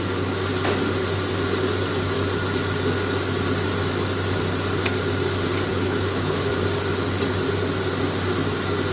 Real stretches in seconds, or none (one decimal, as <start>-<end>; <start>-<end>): 0.0-5.7; 6.5-8.9